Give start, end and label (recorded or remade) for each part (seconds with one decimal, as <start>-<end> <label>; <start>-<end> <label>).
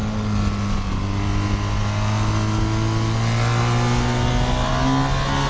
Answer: 0.0-5.5 recorded